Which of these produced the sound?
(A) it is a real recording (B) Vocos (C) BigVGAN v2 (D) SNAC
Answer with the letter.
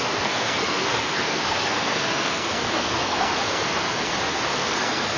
D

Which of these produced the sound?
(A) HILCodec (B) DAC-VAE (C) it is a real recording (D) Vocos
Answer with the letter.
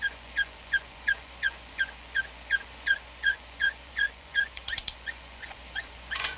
D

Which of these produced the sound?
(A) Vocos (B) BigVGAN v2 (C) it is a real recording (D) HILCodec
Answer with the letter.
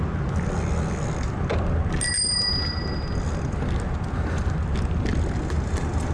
C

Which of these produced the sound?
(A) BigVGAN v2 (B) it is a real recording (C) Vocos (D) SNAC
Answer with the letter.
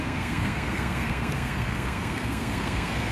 D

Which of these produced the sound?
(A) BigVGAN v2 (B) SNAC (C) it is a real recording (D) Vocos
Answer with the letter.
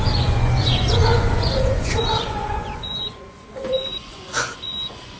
D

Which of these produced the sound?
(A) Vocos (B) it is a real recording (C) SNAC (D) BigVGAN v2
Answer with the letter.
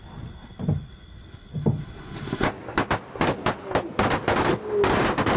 B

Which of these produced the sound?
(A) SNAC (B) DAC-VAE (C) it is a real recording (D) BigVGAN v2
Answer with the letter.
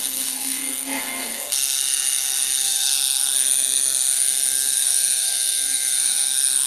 A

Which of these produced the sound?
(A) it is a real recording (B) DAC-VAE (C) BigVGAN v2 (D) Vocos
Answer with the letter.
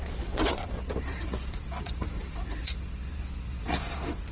D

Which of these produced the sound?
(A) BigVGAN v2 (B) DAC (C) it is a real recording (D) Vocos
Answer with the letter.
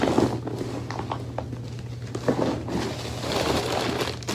C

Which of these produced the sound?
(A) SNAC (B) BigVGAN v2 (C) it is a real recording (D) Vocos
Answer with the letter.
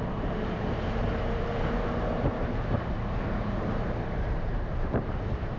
B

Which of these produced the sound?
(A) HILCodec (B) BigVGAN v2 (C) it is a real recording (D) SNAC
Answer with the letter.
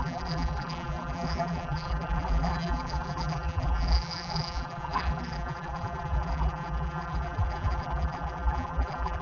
B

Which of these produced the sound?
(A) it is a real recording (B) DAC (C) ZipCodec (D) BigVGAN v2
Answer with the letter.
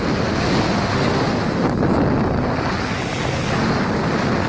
A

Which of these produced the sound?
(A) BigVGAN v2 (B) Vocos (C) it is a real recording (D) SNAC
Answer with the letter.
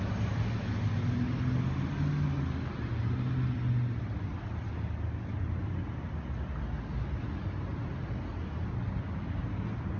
C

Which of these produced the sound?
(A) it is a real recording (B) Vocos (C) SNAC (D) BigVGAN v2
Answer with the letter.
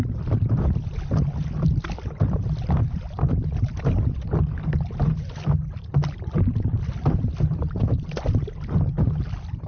A